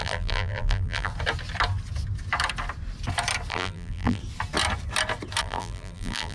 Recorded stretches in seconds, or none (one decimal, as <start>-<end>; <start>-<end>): 1.1-3.5; 4.2-5.4